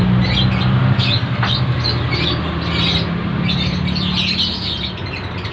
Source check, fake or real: real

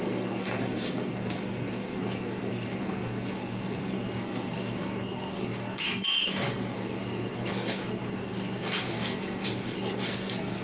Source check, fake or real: fake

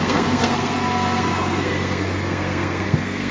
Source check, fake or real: fake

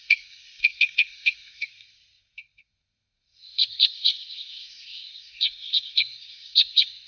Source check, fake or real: fake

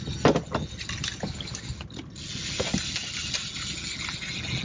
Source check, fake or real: real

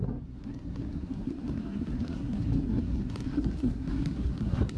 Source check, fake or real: fake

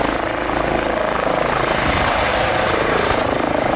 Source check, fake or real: real